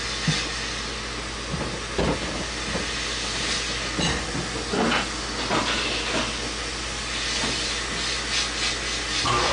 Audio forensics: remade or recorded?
recorded